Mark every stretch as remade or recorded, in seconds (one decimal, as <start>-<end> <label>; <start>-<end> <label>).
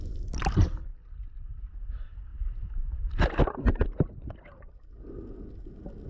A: 0.0-6.1 recorded